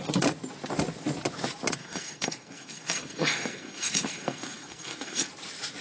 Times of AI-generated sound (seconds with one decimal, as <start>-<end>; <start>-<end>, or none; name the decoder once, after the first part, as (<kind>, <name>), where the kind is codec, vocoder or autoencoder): 1.8-5.3 (codec, SNAC)